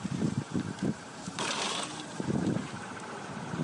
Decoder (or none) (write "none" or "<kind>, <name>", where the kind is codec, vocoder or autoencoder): vocoder, BigVGAN v2